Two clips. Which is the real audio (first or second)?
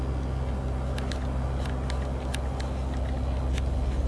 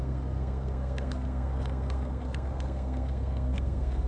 first